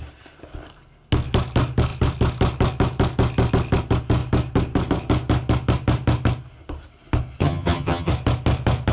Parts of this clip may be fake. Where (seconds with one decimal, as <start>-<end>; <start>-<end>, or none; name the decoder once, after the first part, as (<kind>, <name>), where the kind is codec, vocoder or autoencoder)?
7.4-8.1 (vocoder, HiFi-GAN)